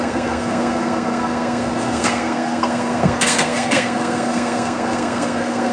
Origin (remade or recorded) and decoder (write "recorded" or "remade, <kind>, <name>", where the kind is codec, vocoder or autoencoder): remade, codec, SNAC